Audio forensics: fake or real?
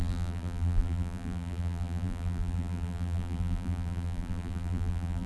fake